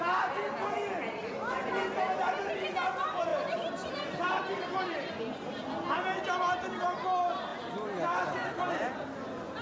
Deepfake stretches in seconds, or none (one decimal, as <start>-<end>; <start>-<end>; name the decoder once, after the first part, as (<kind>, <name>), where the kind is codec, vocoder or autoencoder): 3.3-5.2 (vocoder, BigVGAN v2); 7.5-8.7